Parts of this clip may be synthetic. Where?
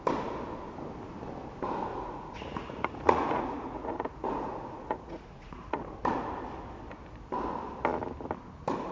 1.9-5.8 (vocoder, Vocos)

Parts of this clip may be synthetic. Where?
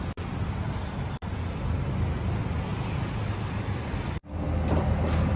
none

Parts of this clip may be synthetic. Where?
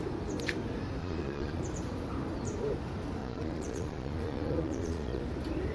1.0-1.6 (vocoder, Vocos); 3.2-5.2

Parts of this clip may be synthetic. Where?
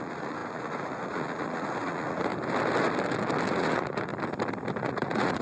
0.0-2.3 (vocoder, Vocos); 3.5-4.1; 4.8-5.4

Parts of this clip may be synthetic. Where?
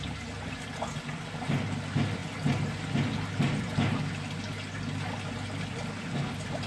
none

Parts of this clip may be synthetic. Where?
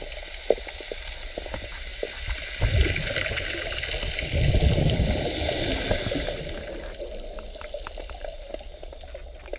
none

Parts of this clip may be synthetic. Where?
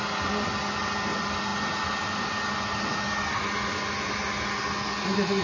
none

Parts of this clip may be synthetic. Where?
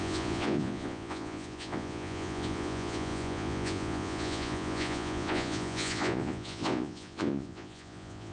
0.0-8.3 (vocoder, Vocos)